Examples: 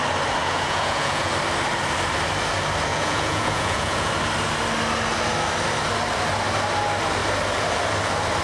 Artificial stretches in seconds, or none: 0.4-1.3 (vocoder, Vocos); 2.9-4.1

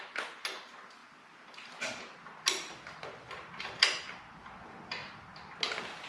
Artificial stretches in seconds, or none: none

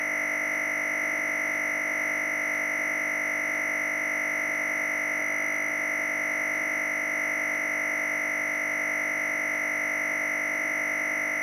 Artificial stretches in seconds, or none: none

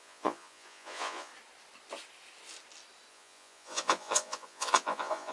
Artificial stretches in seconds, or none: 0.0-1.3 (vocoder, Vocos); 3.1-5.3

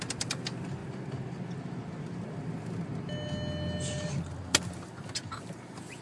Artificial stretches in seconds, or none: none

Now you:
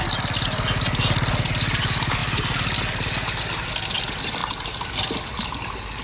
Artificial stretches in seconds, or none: none

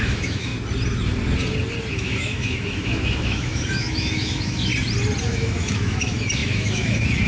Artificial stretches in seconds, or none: 0.0-0.5 (autoencoder, DAC-VAE); 1.9-4.7; 5.2-7.3

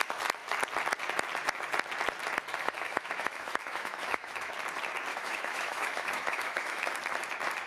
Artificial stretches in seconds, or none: 2.5-4.5 (autoencoder, DAC-VAE); 5.1-6.9